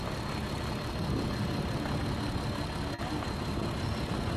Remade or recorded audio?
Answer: recorded